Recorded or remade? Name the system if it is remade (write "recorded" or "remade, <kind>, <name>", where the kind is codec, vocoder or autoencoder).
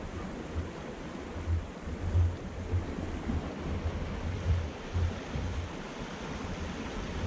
recorded